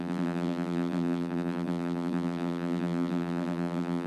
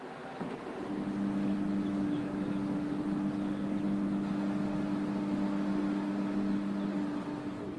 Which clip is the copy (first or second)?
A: first